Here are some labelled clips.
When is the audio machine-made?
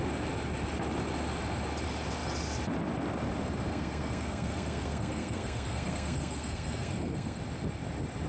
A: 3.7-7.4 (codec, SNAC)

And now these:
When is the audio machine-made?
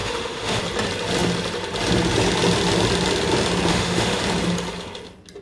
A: 0.0-0.6 (autoencoder, DAC-VAE); 3.7-4.2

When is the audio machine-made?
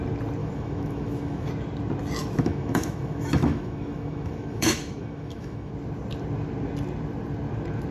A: 0.4-1.5 (autoencoder, DAC-VAE); 2.2-5.7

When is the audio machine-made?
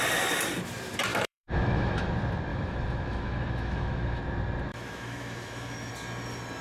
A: 1.1-2.1 (autoencoder, DAC-VAE); 2.5-4.2; 4.7-5.9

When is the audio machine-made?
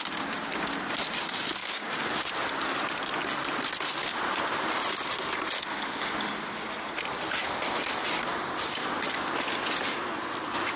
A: 1.6-2.3 (codec, DAC)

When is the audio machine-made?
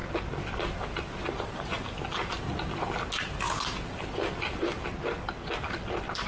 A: none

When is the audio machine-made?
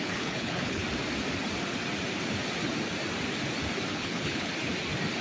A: 0.0-0.8 (codec, HILCodec); 3.9-4.5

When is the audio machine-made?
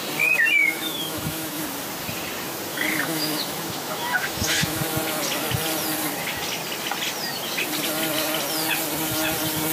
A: 0.6-1.6 (autoencoder, DAC-VAE); 2.7-4.8